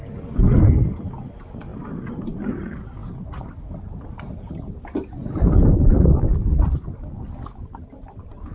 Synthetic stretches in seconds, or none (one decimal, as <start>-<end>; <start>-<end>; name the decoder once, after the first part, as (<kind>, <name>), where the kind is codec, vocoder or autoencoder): 1.7-2.6 (vocoder, BigVGAN v2); 3.0-4.3; 5.2-6.1